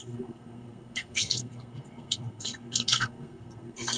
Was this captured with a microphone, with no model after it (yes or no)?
no